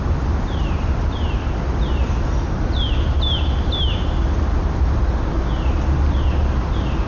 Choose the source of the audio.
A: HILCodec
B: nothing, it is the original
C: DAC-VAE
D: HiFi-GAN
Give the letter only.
B